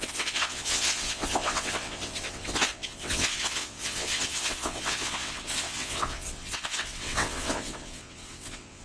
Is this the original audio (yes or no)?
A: no